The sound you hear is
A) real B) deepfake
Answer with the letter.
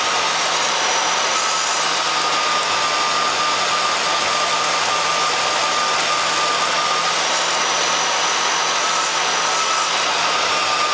A